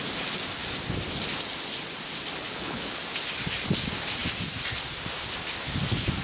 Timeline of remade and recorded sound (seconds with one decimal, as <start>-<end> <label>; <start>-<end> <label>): 0.0-2.4 recorded; 2.4-3.0 remade; 3.0-6.2 recorded